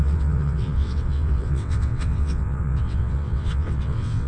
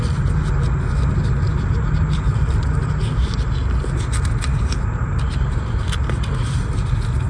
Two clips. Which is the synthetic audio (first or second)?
first